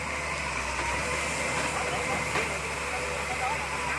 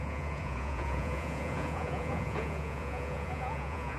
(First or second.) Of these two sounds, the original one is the first